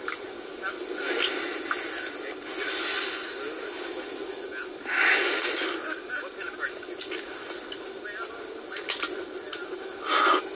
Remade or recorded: recorded